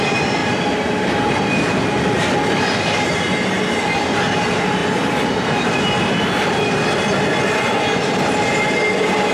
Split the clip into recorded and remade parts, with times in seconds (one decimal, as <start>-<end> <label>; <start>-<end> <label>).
0.0-9.3 recorded